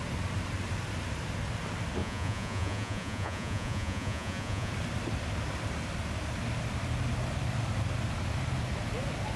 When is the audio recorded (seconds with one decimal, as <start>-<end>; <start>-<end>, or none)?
0.0-2.0; 4.7-9.4